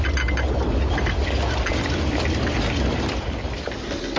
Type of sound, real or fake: real